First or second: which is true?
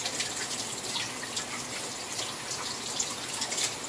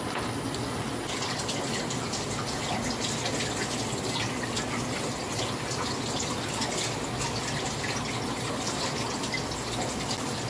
second